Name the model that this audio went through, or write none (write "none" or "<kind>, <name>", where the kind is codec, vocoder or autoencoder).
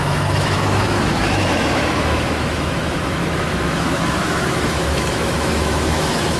autoencoder, DAC-VAE